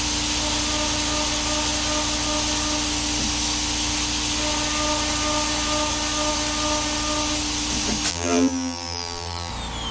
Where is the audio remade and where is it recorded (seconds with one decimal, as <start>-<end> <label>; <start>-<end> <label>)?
0.0-8.1 recorded; 8.1-9.5 remade; 9.5-9.9 recorded